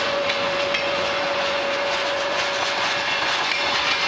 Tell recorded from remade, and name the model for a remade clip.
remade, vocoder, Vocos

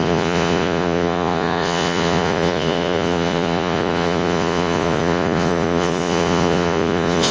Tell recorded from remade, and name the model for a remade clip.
remade, vocoder, Vocos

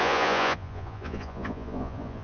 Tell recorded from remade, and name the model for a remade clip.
remade, vocoder, Vocos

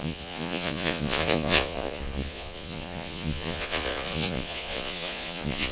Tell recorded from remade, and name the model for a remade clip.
remade, vocoder, Vocos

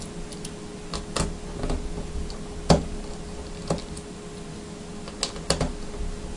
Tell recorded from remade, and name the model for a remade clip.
recorded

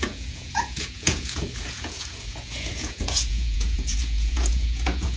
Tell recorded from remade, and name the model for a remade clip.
remade, vocoder, Vocos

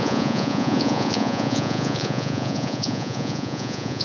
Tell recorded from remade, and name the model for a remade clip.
remade, vocoder, Vocos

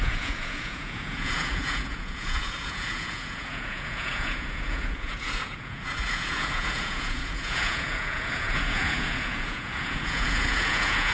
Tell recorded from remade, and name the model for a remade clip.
remade, vocoder, Vocos